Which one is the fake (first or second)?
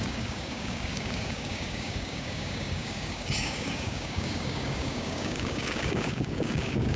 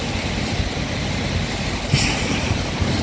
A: first